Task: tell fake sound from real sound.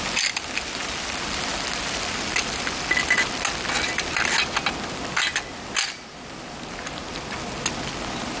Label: real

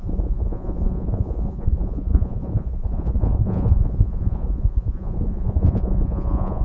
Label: fake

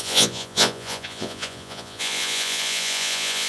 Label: fake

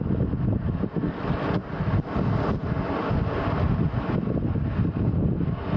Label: real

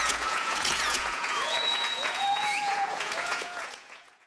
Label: fake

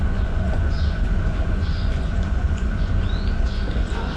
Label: fake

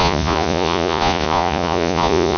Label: fake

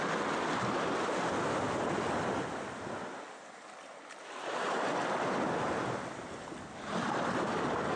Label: real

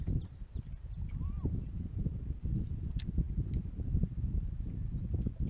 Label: real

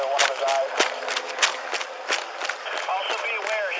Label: real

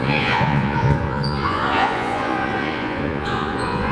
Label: fake